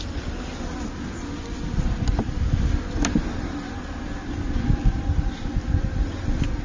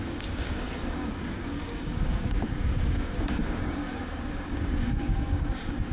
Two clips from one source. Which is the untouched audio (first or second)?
first